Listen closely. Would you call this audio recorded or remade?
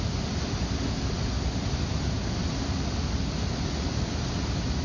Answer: recorded